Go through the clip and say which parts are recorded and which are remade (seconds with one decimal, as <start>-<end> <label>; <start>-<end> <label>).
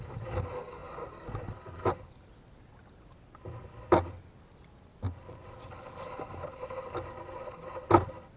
0.0-8.4 recorded